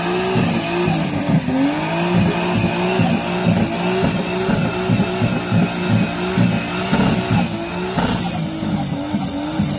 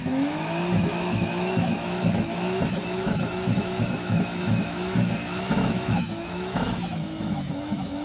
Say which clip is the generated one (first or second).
second